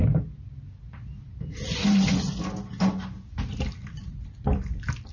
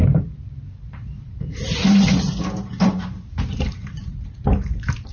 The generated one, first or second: second